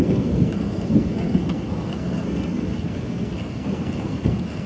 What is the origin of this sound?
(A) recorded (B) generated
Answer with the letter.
B